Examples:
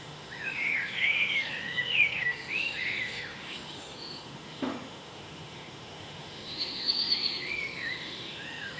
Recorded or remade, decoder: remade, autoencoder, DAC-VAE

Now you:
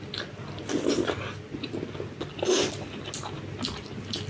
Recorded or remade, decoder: recorded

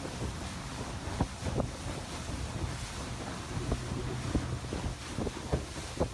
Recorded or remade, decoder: recorded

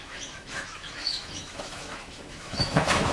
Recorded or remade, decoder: remade, autoencoder, DAC-VAE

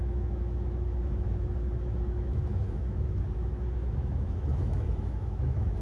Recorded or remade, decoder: remade, autoencoder, DAC-VAE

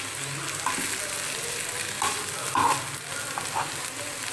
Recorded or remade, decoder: recorded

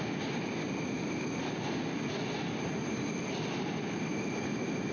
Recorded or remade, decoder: recorded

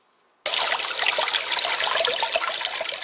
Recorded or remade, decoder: recorded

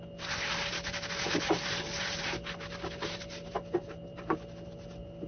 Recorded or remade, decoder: recorded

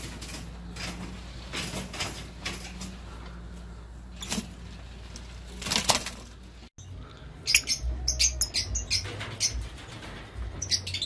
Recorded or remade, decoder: recorded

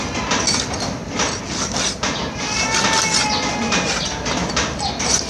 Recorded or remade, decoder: recorded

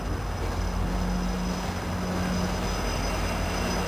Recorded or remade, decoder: recorded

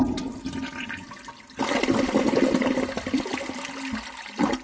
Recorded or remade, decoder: recorded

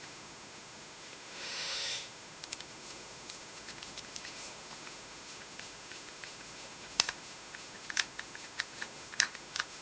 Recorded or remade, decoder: remade, autoencoder, DAC-VAE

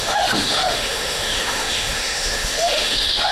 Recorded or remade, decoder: remade, autoencoder, DAC-VAE